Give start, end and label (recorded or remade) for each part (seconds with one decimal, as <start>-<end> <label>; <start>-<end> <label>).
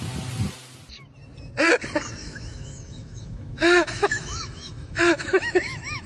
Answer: 0.0-2.2 recorded; 2.2-6.1 remade